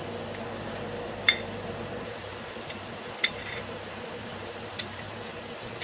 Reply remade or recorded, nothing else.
remade